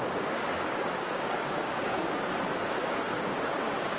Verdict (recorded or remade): remade